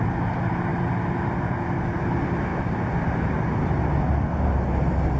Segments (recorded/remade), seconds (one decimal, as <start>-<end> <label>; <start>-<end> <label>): 0.0-5.2 recorded